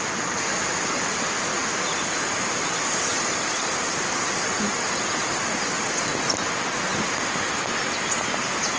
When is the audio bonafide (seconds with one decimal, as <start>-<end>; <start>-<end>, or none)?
0.0-1.5; 5.2-8.8